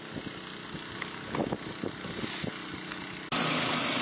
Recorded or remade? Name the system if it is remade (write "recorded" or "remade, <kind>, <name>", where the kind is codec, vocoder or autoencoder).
recorded